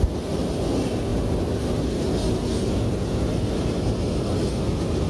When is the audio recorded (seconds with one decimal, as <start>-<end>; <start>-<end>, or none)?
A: 0.0-5.1